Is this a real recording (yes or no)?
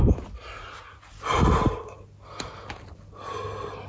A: yes